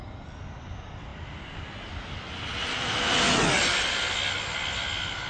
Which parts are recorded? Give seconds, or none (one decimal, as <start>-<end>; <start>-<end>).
0.0-5.3